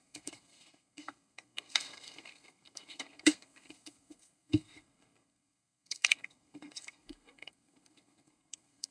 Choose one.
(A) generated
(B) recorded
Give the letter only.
A